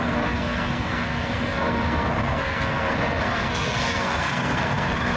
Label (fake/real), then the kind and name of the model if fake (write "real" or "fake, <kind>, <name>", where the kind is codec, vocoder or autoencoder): fake, codec, SNAC